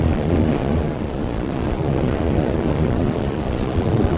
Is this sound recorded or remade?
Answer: remade